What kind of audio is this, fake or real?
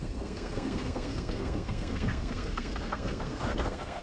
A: fake